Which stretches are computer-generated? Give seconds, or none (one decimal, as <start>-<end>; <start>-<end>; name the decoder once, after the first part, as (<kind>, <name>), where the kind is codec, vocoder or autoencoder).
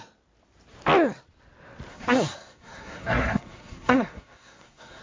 1.9-5.0 (codec, SNAC)